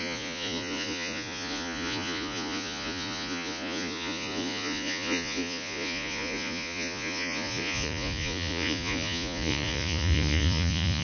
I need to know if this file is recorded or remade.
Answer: remade